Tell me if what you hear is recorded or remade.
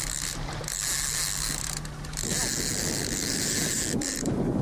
recorded